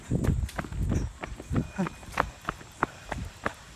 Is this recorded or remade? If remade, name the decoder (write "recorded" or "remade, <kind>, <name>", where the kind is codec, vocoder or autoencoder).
recorded